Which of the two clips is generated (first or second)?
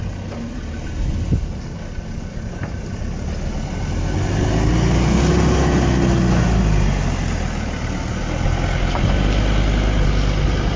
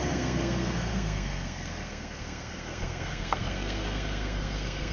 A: second